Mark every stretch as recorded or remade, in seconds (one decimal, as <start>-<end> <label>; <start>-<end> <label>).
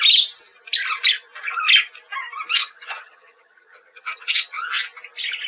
0.0-2.6 recorded; 2.6-4.7 remade; 4.7-5.5 recorded